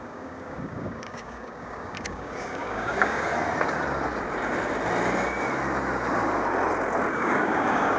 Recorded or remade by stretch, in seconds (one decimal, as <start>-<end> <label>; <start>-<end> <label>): 0.0-3.3 remade; 3.3-7.1 recorded; 7.1-8.0 remade